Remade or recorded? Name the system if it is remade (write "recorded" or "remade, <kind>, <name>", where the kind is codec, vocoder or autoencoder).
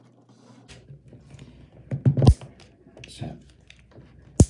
recorded